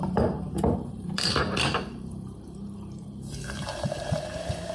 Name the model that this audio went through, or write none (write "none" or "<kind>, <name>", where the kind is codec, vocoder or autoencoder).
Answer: vocoder, BigVGAN v2